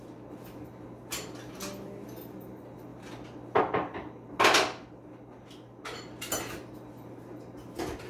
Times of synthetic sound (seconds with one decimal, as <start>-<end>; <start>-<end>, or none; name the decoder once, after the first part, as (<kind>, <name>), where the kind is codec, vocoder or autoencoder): none